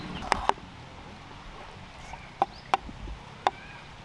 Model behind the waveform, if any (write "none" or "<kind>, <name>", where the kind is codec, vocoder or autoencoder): none